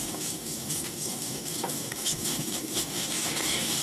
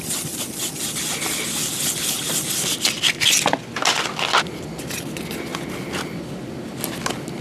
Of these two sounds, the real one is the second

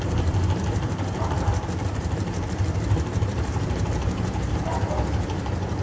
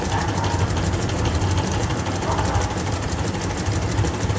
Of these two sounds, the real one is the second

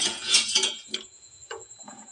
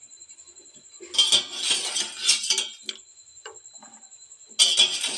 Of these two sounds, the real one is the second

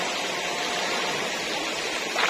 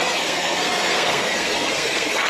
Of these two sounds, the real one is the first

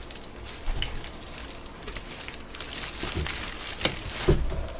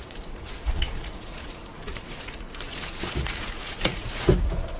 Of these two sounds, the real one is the first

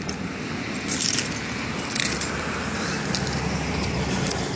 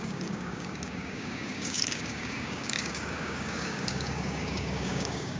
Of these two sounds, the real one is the first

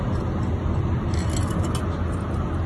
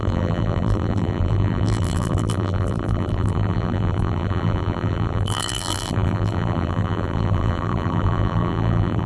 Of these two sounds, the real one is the first